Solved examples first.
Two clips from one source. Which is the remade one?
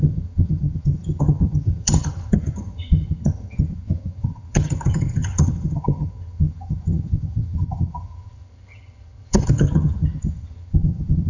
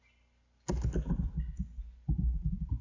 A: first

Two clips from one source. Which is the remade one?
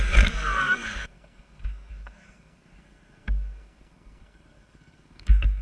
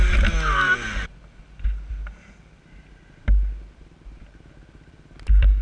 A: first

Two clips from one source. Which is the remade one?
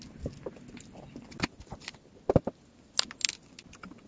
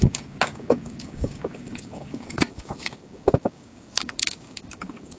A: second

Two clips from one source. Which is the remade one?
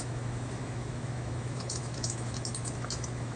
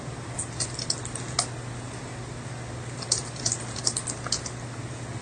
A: first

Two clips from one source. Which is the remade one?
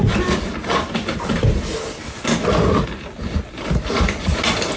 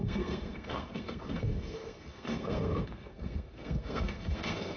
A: second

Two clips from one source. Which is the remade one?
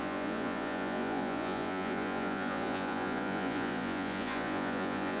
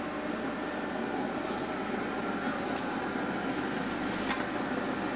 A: first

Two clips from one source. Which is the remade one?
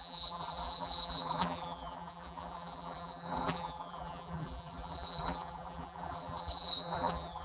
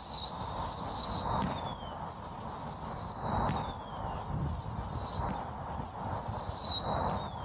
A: first